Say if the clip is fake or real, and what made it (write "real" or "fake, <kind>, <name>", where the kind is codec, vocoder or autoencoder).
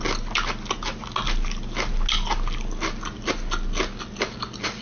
real